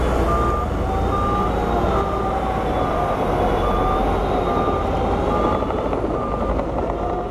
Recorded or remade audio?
recorded